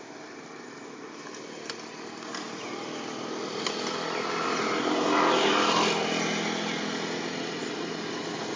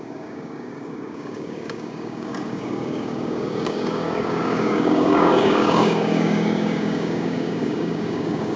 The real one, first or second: first